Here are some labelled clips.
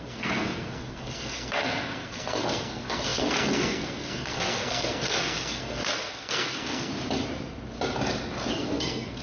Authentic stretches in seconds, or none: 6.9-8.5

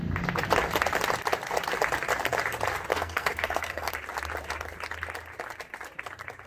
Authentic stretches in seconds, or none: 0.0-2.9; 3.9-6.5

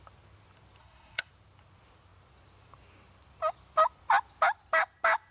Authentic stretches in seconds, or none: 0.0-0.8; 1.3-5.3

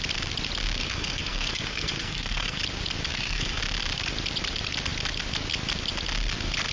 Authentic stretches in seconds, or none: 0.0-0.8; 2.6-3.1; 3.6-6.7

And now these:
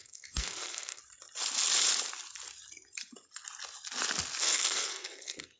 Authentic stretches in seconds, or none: 1.0-4.4

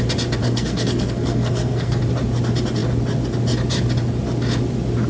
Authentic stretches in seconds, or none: 0.0-0.4; 2.0-5.1